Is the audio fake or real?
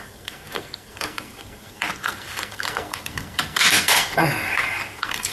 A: fake